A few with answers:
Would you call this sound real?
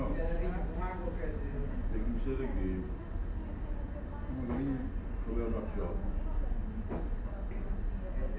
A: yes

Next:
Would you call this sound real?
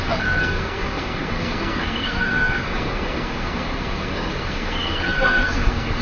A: no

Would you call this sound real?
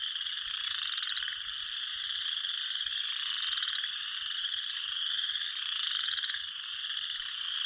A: yes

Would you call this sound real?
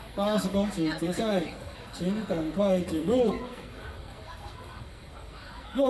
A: no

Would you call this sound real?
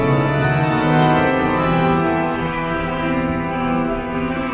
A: no